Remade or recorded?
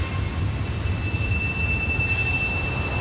recorded